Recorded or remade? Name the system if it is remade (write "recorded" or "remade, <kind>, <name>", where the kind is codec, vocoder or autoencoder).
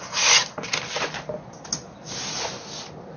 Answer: recorded